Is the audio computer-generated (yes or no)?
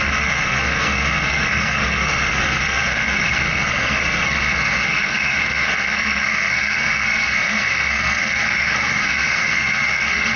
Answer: yes